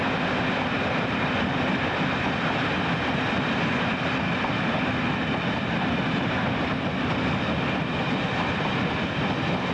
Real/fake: real